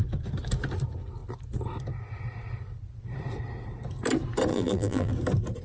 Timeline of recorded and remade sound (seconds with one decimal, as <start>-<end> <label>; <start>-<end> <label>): 0.0-4.5 recorded; 4.5-5.1 remade; 5.1-5.6 recorded